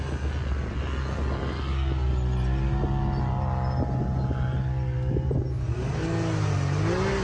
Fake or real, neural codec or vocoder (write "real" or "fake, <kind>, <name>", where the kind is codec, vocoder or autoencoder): real